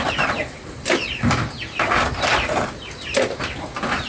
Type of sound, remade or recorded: recorded